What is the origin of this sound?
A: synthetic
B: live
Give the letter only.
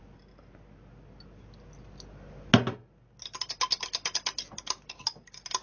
B